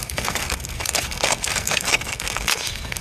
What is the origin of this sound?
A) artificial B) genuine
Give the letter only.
A